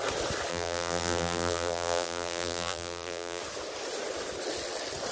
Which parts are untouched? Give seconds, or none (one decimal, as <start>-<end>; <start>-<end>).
0.0-0.5; 3.4-5.1